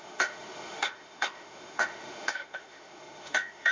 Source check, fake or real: fake